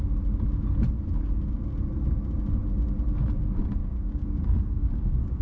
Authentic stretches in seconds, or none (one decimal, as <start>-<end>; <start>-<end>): 0.0-3.8